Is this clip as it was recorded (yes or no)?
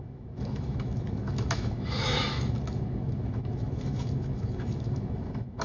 no